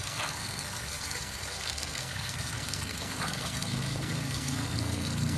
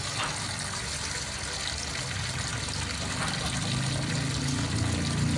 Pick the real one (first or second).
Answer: second